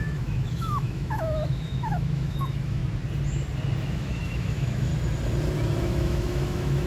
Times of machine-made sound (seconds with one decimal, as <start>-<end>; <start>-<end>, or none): 0.0-2.8; 3.8-4.9; 5.8-6.9